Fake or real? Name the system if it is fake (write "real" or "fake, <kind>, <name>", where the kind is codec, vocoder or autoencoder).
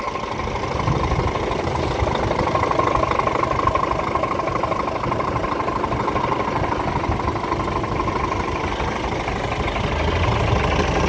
real